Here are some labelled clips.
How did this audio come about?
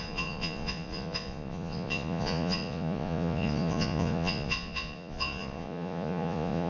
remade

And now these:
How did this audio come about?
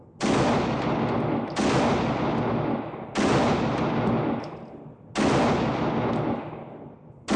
recorded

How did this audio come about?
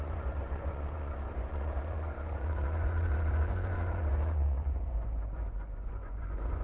remade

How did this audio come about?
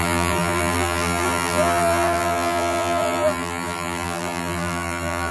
remade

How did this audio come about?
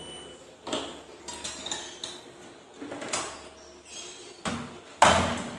recorded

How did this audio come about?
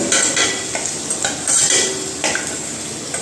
recorded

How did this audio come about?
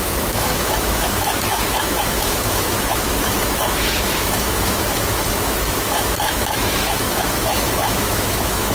remade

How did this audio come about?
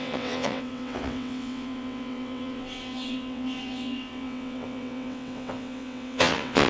remade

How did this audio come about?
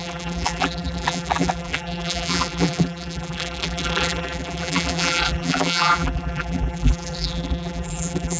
remade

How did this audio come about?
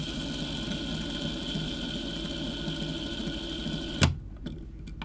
recorded